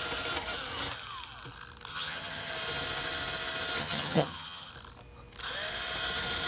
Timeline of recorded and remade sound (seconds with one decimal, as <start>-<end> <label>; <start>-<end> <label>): 0.0-1.9 recorded; 1.9-2.5 remade; 2.5-3.8 recorded; 3.8-4.7 remade; 4.7-6.5 recorded